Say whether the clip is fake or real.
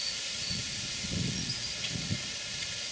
fake